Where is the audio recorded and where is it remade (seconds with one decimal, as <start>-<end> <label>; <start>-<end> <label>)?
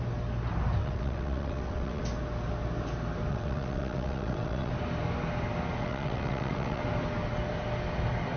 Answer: 0.0-0.8 recorded; 0.8-2.0 remade; 2.0-3.3 recorded; 3.3-4.7 remade; 4.7-5.8 recorded; 5.8-6.8 remade; 6.8-8.4 recorded